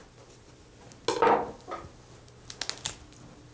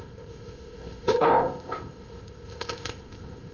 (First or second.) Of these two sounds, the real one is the first